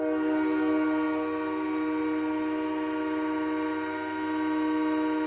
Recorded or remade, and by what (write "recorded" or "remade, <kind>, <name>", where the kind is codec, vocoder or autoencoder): recorded